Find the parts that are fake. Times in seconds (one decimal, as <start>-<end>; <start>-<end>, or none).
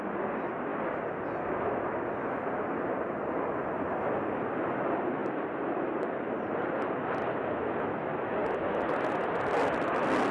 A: 5.2-6.8